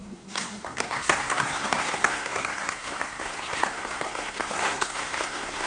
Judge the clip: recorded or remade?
remade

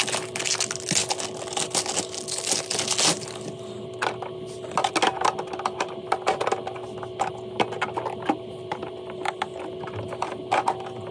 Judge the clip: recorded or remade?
recorded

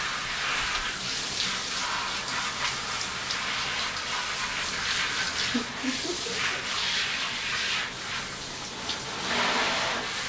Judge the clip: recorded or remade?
recorded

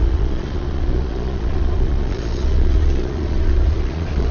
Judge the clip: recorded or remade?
remade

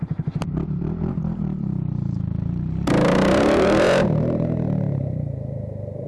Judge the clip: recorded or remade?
remade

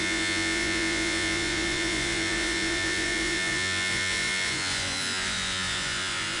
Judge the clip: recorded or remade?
remade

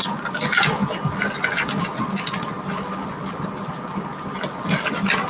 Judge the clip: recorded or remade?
recorded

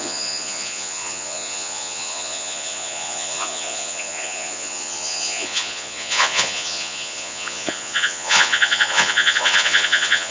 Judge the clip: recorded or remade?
remade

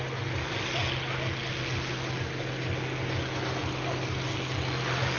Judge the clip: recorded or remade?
recorded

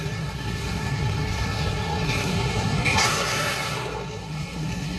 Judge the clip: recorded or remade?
remade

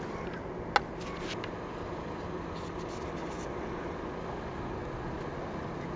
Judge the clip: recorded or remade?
recorded